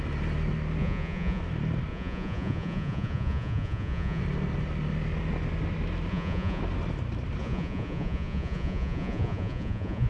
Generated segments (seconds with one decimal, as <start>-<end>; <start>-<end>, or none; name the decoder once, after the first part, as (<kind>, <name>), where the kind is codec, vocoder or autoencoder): 0.8-1.4 (vocoder, Vocos); 1.9-4.2; 6.1-6.6; 7.4-10.1